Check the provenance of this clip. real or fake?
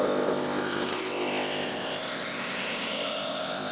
fake